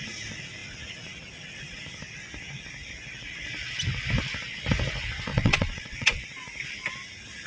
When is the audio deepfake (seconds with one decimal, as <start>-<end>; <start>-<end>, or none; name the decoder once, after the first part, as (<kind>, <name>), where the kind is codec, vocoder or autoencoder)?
5.3-6.2 (vocoder, WaveNeXt)